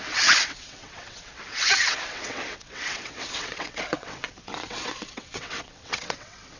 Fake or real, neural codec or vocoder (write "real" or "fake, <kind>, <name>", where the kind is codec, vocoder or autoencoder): fake, vocoder, WaveNeXt